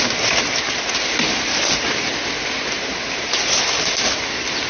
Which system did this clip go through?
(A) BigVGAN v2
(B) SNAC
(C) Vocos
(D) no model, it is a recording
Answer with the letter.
D